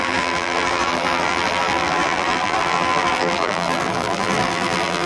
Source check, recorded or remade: remade